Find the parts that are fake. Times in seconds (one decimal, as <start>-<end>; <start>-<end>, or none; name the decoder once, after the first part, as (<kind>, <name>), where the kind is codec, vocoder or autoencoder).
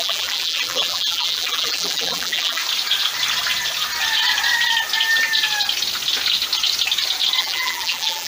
0.0-2.6 (vocoder, BigVGAN v2); 7.4-8.3